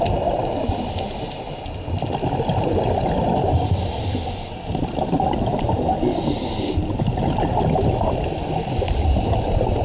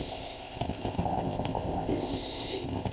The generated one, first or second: second